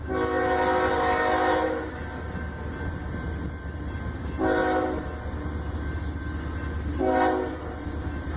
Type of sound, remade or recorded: recorded